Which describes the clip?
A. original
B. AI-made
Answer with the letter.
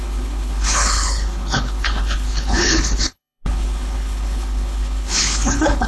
B